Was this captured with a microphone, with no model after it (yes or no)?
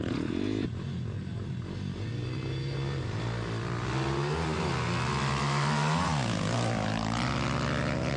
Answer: yes